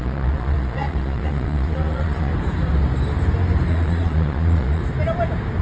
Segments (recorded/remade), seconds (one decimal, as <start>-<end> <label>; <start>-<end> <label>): 0.0-2.3 remade; 2.3-3.7 recorded; 3.7-4.8 remade; 4.8-5.6 recorded